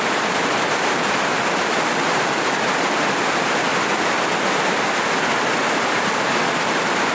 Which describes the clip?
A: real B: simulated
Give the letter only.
B